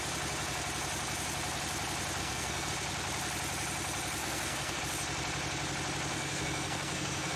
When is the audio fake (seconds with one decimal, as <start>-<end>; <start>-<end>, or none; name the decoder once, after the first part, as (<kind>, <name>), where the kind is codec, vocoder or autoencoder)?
2.2-2.7 (codec, SNAC); 4.2-4.8; 6.1-7.4